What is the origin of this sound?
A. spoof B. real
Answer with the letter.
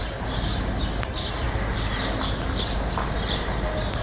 B